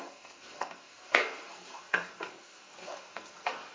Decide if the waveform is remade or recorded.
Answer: remade